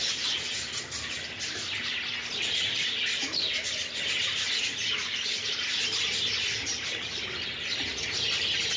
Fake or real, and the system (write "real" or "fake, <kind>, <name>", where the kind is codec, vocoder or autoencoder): real